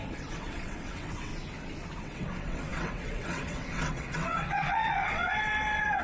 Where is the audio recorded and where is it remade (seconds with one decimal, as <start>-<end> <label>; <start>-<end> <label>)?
0.0-1.3 remade; 1.3-2.0 recorded; 2.0-6.0 remade